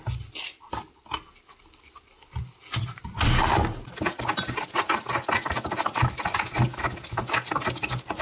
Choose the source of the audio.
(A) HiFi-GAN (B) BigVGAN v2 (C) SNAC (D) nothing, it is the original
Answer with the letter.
D